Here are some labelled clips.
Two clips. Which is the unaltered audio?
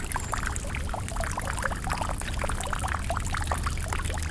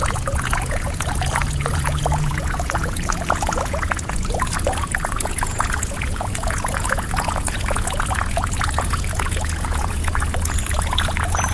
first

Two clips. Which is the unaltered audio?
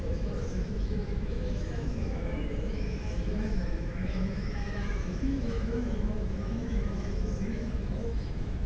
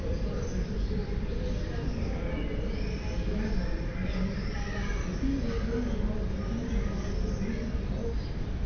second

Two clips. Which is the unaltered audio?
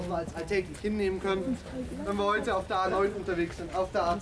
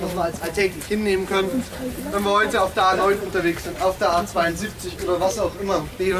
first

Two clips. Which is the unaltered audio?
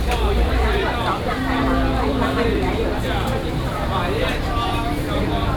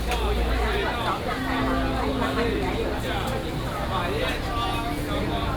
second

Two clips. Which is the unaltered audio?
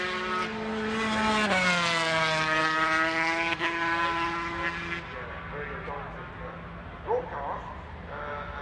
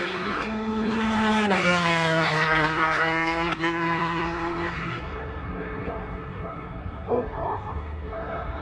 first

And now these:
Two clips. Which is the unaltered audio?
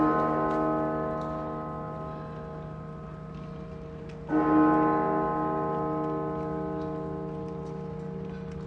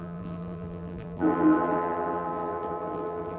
first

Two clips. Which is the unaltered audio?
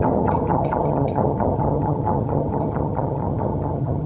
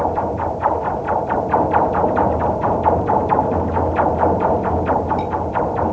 second